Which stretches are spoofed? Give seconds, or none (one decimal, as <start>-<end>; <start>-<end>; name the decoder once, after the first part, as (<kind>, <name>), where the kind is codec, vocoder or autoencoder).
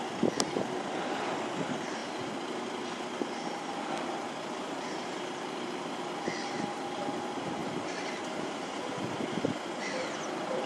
0.0-2.0 (vocoder, BigVGAN v2); 3.2-10.7